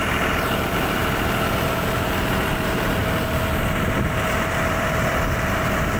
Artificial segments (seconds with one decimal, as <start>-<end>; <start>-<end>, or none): 0.0-1.0; 1.5-3.0; 3.8-6.0